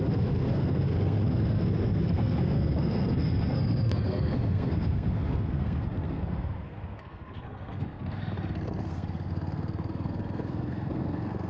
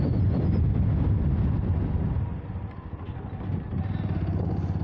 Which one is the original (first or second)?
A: second